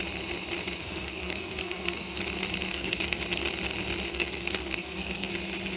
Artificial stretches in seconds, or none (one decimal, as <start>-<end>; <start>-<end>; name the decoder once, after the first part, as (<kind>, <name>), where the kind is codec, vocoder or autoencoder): 0.8-2.2 (codec, SNAC); 2.7-3.2; 4.1-5.3